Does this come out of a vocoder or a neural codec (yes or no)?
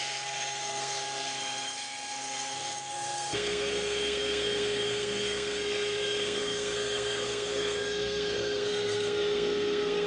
yes